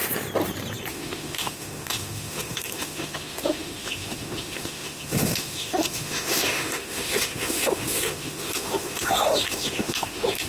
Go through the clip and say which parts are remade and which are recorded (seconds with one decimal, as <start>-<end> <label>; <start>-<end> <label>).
0.0-0.9 recorded; 0.9-10.5 remade